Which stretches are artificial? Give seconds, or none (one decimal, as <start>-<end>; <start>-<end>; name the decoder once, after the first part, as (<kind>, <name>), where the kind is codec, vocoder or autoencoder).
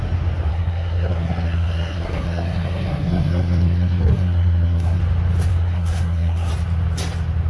0.5-5.0 (codec, SNAC); 5.5-6.5